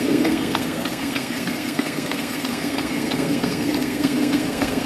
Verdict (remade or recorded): remade